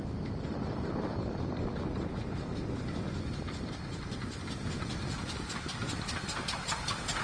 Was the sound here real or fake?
fake